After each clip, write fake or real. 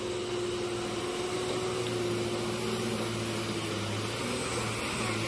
real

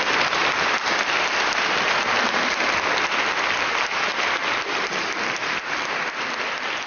real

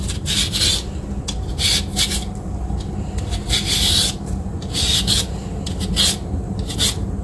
real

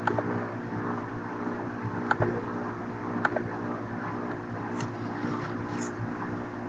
real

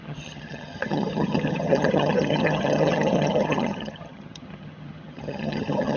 fake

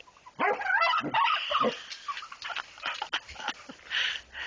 real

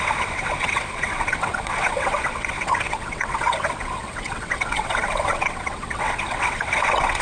fake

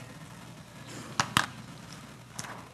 real